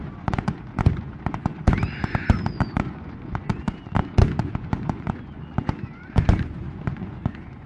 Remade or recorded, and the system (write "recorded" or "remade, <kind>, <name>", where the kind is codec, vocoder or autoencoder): remade, vocoder, Vocos